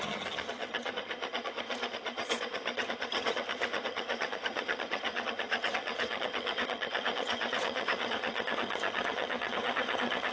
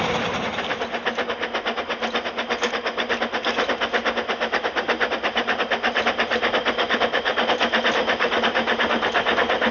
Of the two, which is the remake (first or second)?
first